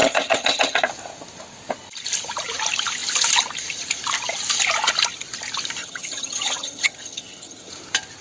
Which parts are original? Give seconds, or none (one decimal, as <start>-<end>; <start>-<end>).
0.8-5.8; 7.7-8.2